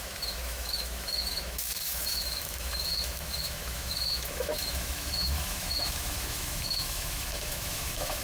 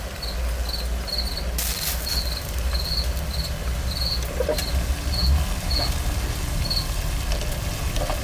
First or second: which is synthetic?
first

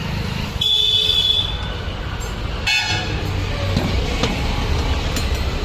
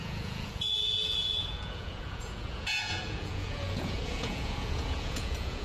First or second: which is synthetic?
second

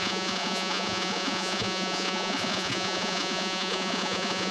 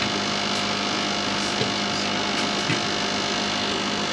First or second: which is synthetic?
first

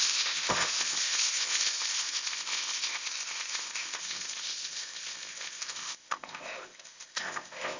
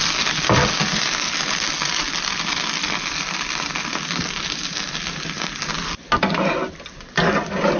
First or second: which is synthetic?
first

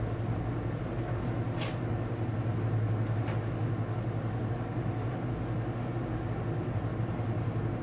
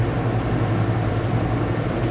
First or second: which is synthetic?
second